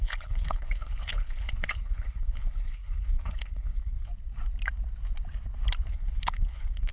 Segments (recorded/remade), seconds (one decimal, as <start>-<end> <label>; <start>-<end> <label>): 0.0-4.1 remade; 4.1-5.9 recorded; 5.9-6.9 remade